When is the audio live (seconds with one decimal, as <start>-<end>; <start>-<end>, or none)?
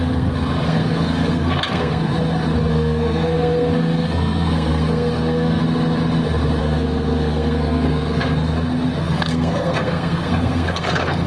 2.1-2.7; 5.6-6.6; 8.5-9.0